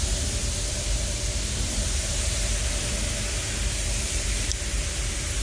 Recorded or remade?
remade